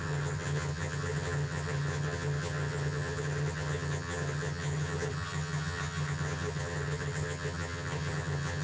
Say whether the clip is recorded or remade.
remade